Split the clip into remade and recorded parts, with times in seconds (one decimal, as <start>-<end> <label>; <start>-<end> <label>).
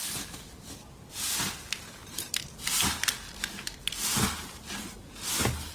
0.0-5.7 recorded